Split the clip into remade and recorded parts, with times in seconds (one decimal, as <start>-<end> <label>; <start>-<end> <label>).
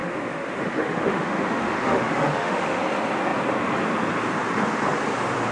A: 0.0-2.8 remade; 2.8-5.5 recorded